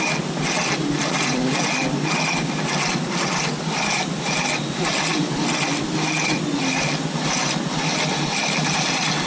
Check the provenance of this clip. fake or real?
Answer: real